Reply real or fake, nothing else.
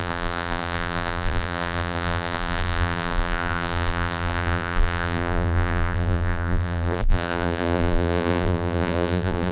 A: fake